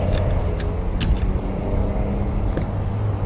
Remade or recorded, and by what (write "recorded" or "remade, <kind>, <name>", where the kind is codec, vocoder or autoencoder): recorded